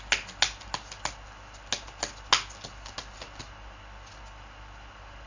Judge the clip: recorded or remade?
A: recorded